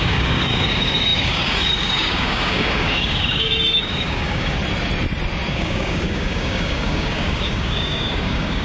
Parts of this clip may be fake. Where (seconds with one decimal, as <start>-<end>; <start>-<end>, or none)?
0.0-4.6; 5.5-8.6